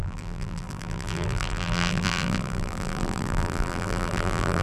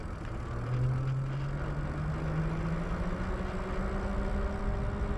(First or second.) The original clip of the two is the second